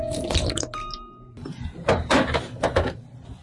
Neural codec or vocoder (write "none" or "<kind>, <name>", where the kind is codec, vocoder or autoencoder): vocoder, BigVGAN v2